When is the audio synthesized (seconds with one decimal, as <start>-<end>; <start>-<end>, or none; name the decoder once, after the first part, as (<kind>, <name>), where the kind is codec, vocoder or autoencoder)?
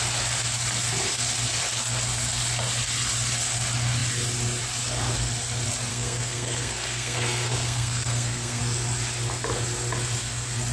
5.9-8.6 (codec, SNAC)